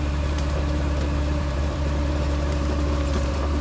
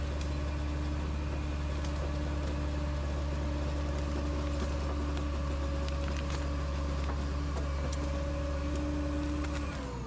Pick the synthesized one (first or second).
first